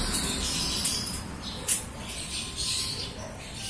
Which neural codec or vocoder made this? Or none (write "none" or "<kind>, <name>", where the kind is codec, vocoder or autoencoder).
vocoder, BigVGAN v2